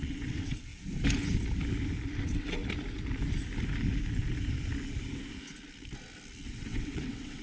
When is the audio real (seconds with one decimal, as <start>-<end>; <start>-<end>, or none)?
0.7-2.2; 2.6-6.5